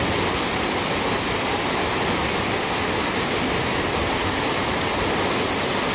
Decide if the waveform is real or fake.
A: real